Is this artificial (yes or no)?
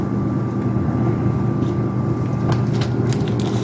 no